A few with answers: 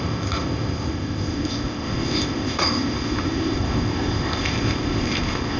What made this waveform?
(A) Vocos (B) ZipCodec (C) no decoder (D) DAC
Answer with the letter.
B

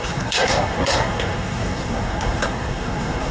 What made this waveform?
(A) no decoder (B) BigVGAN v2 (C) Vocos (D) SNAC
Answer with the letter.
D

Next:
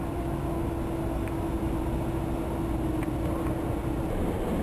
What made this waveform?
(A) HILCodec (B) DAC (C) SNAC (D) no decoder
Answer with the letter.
D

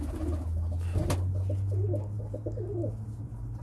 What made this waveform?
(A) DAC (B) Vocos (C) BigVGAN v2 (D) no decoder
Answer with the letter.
D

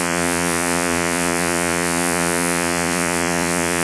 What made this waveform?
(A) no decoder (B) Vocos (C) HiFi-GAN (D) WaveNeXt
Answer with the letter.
B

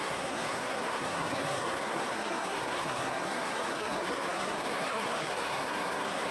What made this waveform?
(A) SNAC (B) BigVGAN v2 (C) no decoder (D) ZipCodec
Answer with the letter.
A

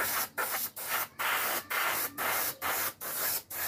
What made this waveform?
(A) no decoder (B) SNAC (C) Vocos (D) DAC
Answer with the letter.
A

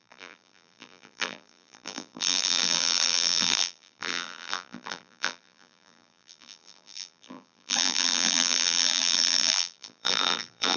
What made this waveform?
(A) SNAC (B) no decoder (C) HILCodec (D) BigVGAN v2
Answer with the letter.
D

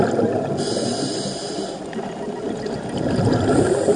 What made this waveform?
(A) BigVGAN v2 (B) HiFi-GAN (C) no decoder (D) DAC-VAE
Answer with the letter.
C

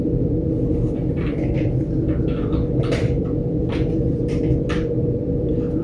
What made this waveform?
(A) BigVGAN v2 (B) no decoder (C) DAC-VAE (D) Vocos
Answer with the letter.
A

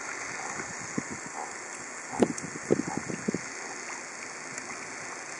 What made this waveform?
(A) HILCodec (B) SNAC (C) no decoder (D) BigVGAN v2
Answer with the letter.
C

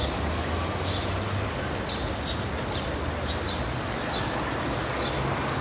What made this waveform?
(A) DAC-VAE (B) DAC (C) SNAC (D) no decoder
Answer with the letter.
D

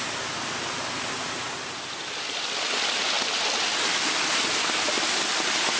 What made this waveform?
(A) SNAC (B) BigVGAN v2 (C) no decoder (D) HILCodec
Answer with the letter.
C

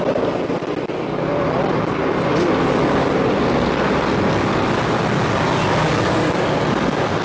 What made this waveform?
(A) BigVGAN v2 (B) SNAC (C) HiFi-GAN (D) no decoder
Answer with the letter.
D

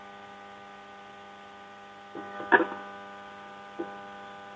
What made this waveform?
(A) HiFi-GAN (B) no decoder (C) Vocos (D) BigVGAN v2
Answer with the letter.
B